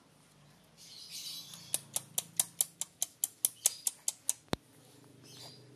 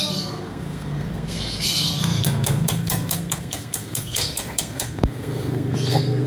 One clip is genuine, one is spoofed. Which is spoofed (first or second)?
second